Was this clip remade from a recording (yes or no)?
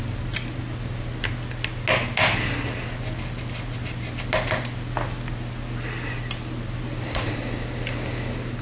no